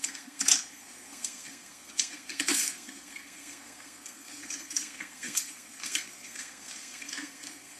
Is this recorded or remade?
remade